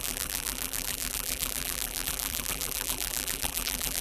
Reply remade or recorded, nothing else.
remade